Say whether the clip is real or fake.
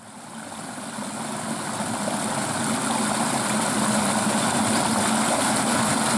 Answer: real